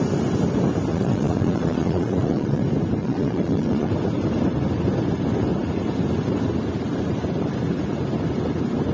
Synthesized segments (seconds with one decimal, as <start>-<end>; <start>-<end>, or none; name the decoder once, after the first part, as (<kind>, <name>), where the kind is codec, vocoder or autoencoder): 0.9-2.6 (vocoder, Vocos); 3.0-3.9